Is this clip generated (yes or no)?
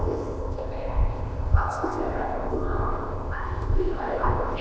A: yes